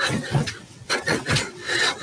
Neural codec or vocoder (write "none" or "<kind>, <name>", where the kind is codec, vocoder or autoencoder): vocoder, WaveNeXt